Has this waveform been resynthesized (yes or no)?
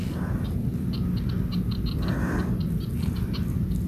no